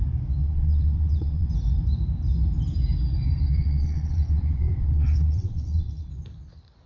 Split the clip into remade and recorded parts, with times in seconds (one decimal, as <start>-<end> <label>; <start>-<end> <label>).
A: 0.0-0.4 recorded; 0.4-1.5 remade; 1.5-3.6 recorded; 3.6-6.1 remade; 6.1-6.9 recorded